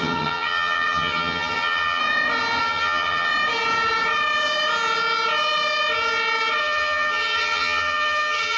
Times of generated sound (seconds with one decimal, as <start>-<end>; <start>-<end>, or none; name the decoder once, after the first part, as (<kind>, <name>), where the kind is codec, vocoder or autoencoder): 0.0-2.0 (vocoder, HiFi-GAN); 2.6-3.3; 6.6-8.6